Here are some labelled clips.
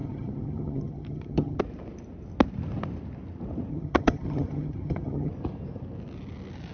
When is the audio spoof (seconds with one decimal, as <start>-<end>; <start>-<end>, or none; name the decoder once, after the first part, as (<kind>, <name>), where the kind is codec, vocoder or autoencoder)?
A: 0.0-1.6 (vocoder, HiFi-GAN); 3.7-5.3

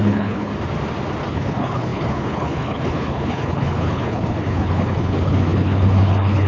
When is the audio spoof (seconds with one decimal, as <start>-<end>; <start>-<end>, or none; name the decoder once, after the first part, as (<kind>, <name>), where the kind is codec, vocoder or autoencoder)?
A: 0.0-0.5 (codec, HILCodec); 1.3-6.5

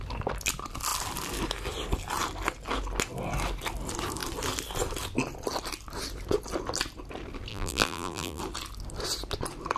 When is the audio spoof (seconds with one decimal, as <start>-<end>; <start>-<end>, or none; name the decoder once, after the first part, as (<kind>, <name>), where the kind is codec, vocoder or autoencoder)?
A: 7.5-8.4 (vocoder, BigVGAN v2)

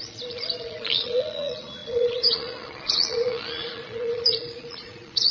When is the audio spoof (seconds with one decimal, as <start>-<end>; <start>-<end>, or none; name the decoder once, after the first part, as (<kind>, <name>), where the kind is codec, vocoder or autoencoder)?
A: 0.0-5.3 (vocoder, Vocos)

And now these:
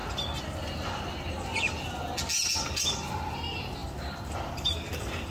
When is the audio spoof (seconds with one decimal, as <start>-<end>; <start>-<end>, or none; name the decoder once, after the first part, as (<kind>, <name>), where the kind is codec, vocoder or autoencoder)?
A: 2.8-5.3 (vocoder, BigVGAN v2)